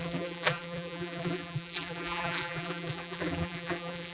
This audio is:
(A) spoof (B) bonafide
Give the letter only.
A